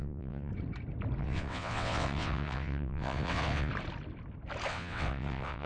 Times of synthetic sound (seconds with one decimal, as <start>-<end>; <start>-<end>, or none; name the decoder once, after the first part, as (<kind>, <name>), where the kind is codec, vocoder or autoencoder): 0.0-0.5 (vocoder, WaveNeXt); 1.2-3.7; 4.7-5.7

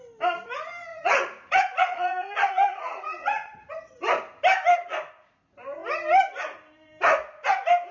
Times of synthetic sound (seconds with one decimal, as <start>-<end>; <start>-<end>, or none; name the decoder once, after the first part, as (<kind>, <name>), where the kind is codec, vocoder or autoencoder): 0.9-3.7 (vocoder, Vocos)

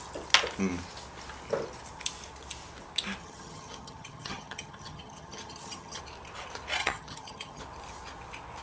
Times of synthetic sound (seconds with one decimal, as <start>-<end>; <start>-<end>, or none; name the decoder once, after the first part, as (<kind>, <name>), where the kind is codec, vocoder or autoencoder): 3.2-6.0 (vocoder, HiFi-GAN); 6.8-7.6

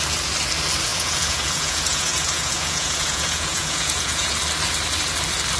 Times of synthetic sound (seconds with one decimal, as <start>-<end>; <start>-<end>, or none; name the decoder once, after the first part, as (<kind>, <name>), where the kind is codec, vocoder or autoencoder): 0.9-4.3 (vocoder, Vocos)